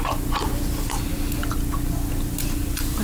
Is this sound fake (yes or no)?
no